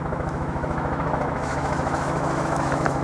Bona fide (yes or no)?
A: no